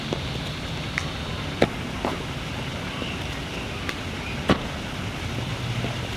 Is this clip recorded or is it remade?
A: recorded